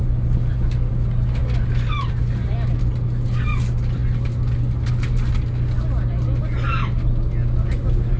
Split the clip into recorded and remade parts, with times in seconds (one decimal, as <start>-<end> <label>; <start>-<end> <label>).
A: 0.0-8.2 recorded